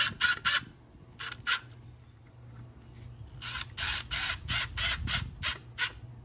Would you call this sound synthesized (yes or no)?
no